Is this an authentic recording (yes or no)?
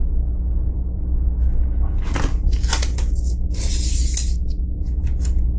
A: yes